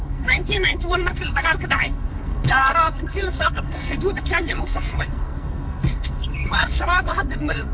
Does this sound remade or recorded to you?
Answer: remade